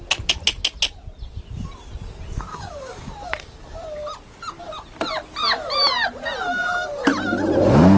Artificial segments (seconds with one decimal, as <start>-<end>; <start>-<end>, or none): 2.5-3.1